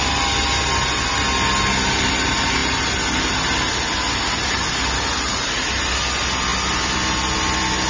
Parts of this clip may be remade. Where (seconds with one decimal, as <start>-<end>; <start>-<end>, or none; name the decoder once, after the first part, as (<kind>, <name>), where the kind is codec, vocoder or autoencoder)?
none